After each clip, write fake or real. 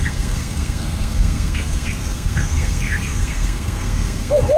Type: fake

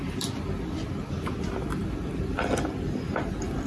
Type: real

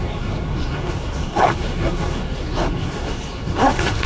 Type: fake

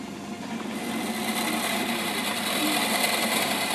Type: real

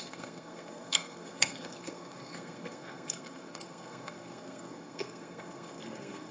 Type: fake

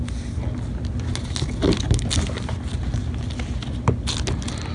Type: real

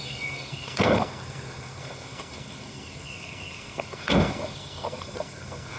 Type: fake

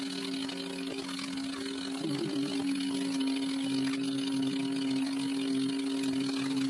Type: real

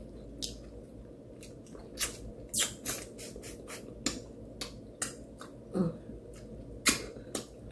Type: real